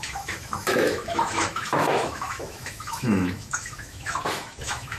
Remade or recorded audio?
remade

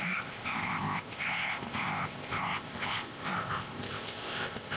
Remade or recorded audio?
remade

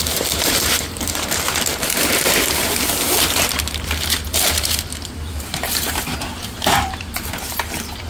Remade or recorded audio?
remade